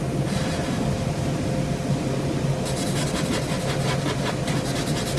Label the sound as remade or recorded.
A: recorded